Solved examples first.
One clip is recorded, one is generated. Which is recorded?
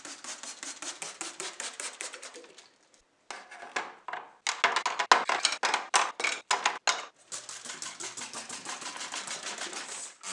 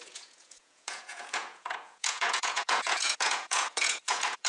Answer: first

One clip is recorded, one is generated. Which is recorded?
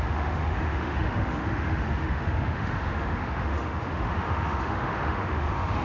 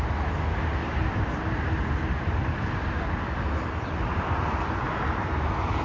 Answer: second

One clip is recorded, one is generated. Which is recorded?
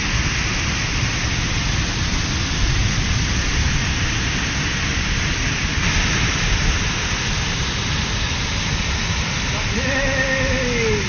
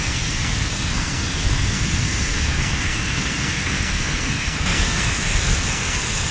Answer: first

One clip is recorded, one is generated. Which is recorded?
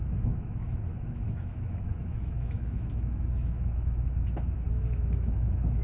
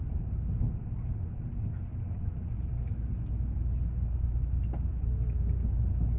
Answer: second